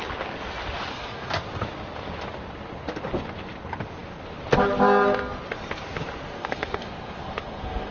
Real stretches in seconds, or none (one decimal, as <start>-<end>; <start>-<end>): 0.0-0.9; 1.4-6.3